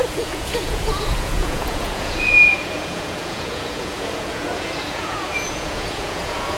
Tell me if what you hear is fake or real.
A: fake